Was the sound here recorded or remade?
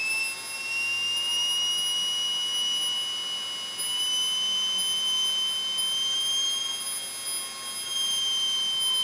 recorded